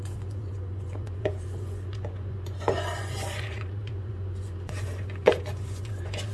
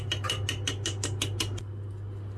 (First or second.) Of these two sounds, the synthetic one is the first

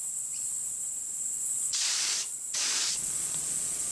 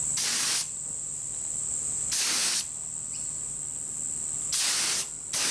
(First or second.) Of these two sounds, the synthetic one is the first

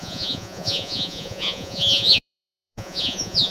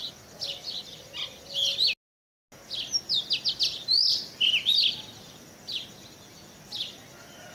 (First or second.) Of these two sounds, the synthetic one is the first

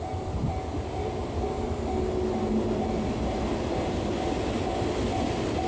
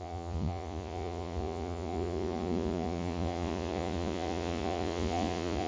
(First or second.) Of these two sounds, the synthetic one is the second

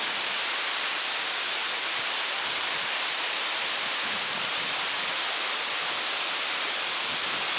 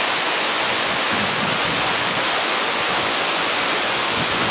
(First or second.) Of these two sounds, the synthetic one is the second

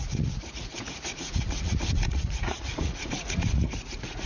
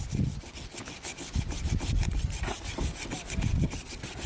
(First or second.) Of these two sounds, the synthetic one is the first